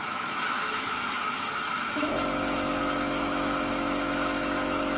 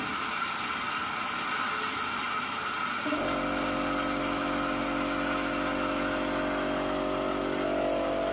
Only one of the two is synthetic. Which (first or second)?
first